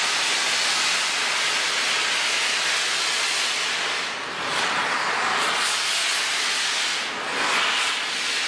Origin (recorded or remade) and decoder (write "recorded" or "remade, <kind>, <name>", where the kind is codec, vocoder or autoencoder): recorded